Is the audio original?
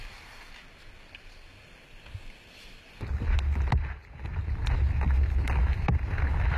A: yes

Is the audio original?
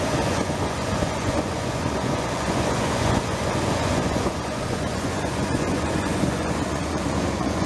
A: no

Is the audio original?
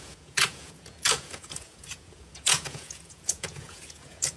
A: no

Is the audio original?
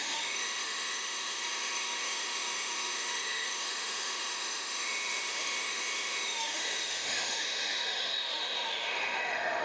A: no